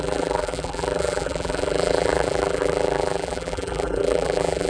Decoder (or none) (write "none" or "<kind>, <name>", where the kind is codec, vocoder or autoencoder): vocoder, BigVGAN v2